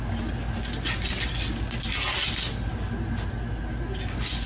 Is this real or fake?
real